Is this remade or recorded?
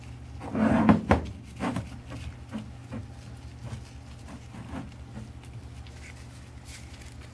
recorded